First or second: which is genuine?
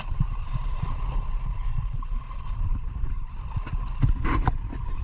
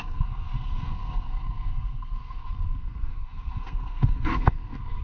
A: first